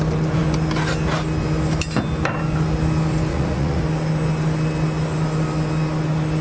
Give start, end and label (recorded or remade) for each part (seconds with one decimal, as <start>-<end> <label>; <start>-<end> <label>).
0.0-3.3 recorded; 3.3-3.8 remade; 3.8-6.4 recorded